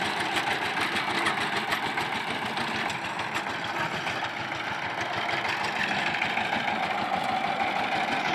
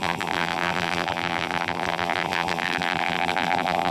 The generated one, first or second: second